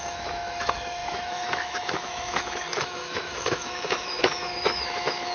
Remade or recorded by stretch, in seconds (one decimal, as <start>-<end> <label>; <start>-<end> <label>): 0.0-5.3 remade